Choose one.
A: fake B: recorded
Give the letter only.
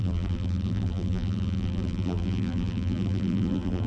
A